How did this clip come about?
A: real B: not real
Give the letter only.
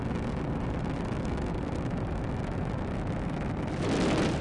A